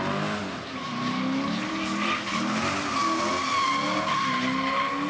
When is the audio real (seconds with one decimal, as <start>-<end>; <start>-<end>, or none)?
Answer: 0.0-5.1